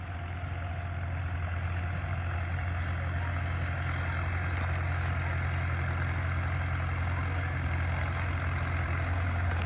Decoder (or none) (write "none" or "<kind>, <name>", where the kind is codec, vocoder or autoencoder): none